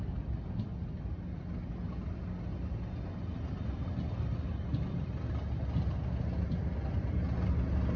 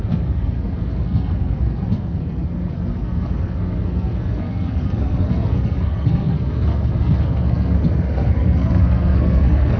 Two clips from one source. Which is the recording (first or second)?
first